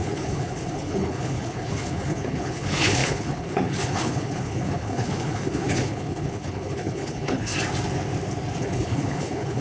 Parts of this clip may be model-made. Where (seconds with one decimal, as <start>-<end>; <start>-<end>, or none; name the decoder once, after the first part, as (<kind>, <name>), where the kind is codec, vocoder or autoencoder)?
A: 0.0-7.5 (codec, HILCodec); 8.6-9.6